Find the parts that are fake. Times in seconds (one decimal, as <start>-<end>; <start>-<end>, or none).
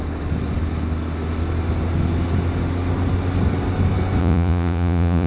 4.2-5.3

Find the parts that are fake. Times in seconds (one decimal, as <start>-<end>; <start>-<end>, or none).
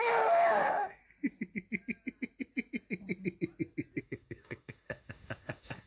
0.0-1.0; 4.0-5.9